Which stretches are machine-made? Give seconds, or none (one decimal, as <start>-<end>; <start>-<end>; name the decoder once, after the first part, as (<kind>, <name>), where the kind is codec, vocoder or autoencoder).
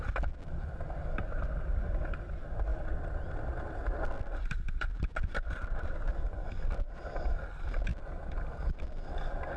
0.0-3.8 (vocoder, BigVGAN v2); 4.4-7.9; 8.6-9.6